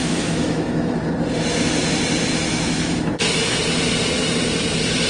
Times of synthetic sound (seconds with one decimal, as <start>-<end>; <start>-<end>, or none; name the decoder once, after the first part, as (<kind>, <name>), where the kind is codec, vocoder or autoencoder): 0.0-1.1 (autoencoder, DAC-VAE); 2.3-3.6